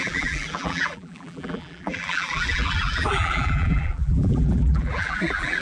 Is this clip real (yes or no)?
no